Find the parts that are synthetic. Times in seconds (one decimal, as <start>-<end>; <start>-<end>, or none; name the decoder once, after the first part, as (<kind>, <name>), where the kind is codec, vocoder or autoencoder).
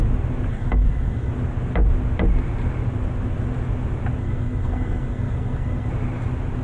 0.5-1.3 (codec, SNAC); 4.2-5.9